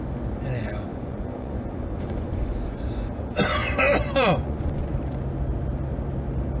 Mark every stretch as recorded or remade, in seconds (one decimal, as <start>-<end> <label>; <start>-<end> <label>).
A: 0.0-0.9 recorded; 0.9-4.9 remade; 4.9-6.6 recorded